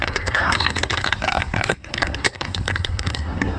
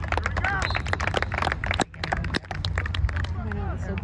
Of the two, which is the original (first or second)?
second